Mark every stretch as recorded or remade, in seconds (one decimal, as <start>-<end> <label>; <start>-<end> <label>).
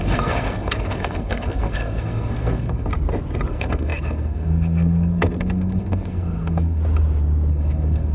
0.0-2.9 remade; 2.9-3.5 recorded; 3.5-6.8 remade; 6.8-7.5 recorded; 7.5-8.1 remade